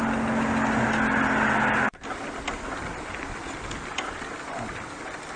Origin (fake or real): real